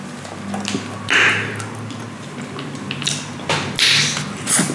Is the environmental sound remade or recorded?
recorded